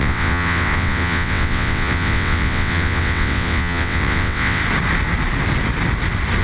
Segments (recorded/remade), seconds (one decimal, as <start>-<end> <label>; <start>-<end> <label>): 0.0-4.6 remade; 4.6-6.4 recorded

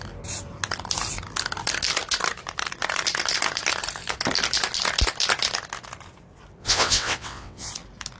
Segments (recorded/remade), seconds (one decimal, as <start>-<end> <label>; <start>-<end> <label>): 0.0-6.6 recorded; 6.6-7.7 remade; 7.7-8.2 recorded

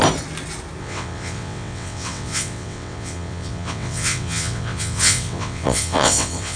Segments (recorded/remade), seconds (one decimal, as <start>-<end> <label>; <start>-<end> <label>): 0.0-0.8 recorded; 0.8-6.6 remade

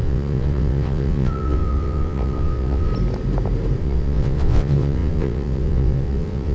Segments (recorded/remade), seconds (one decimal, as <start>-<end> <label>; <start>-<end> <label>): 0.0-2.9 remade; 2.9-3.8 recorded; 3.8-6.5 remade

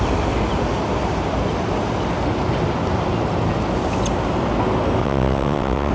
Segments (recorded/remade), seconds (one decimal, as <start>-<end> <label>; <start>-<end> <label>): 0.0-5.0 recorded; 5.0-5.9 remade

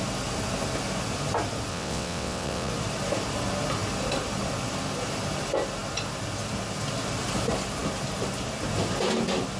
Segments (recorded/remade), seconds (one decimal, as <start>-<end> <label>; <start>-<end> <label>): 0.0-1.7 recorded; 1.7-2.7 remade; 2.7-9.6 recorded

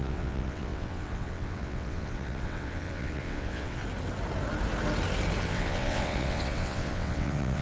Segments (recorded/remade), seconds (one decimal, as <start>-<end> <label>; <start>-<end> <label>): 0.0-3.8 remade; 3.8-5.4 recorded; 5.4-7.6 remade